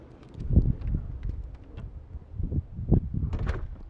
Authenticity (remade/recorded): recorded